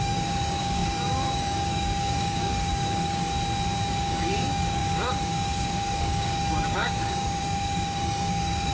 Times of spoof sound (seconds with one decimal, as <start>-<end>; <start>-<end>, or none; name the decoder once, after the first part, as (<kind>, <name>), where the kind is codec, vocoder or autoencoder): 0.0-3.3 (codec, DAC); 3.9-8.7